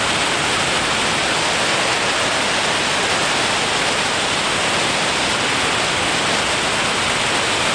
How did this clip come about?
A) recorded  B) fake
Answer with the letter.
A